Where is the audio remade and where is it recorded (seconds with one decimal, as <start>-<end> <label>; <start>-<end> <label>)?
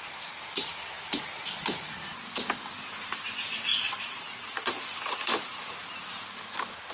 0.0-3.7 recorded; 3.7-4.8 remade; 4.8-6.9 recorded